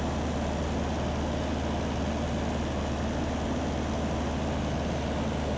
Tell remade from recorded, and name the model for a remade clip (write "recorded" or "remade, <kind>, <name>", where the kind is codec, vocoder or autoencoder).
recorded